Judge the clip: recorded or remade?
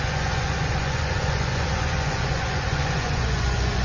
remade